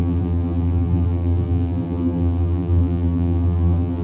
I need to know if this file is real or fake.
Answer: fake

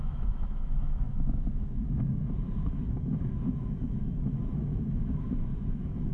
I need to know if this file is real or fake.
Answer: fake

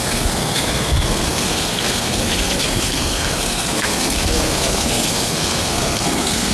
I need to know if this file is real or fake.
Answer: fake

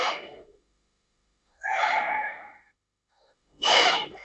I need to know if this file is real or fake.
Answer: fake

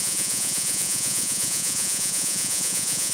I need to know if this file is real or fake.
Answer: fake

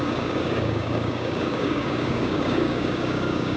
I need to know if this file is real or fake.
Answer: fake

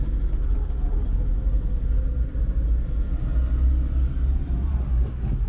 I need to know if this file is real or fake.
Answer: real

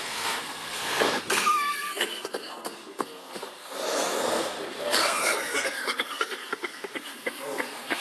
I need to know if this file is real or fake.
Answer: fake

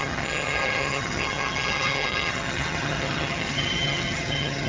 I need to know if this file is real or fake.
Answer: fake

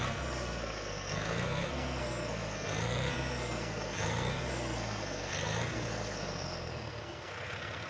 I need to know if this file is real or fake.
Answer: fake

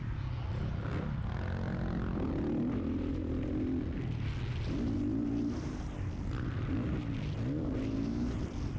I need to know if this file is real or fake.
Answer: real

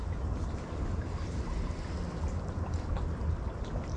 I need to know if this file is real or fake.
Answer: real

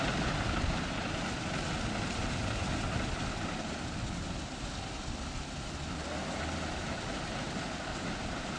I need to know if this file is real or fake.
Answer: real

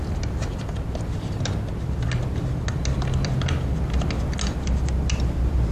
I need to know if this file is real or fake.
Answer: real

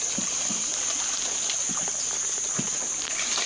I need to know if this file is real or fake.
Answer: real